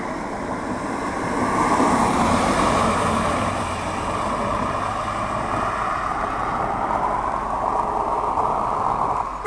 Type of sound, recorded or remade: remade